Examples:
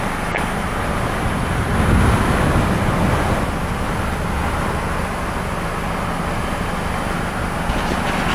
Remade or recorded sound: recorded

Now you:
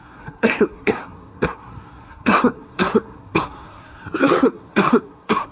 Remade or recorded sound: remade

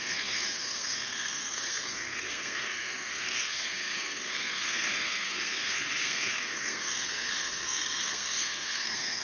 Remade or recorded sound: remade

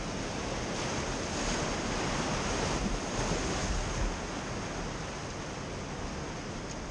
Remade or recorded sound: recorded